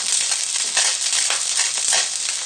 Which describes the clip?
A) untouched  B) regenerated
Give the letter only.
A